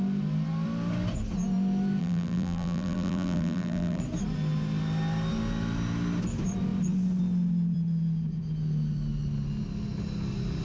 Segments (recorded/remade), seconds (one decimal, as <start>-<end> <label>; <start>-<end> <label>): 0.0-2.0 recorded; 2.0-4.0 remade; 4.0-10.6 recorded